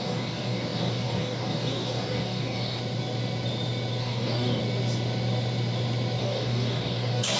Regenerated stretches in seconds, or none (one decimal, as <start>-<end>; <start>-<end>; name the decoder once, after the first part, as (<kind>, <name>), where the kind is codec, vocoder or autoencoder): 0.0-2.8 (codec, DAC); 4.0-4.6; 6.2-7.4